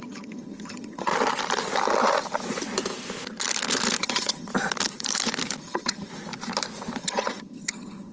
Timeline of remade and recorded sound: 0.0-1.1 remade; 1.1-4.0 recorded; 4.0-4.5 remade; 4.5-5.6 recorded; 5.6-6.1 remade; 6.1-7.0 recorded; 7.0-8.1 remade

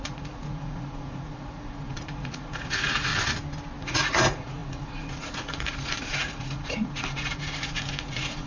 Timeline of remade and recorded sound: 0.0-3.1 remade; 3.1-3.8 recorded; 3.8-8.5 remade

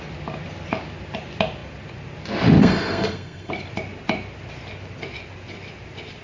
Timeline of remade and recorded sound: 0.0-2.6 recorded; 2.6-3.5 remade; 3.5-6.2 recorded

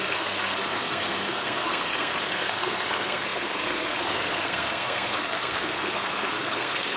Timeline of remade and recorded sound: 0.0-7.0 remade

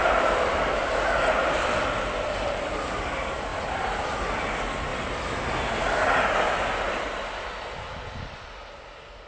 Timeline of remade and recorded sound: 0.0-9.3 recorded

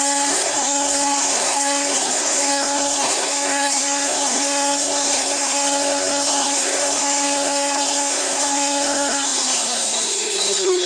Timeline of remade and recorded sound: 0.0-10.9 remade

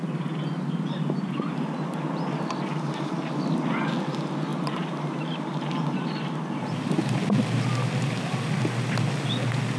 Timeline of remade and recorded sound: 0.0-4.5 recorded; 4.5-6.1 remade; 6.1-9.8 recorded

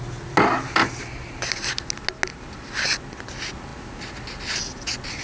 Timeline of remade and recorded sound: 0.0-5.2 recorded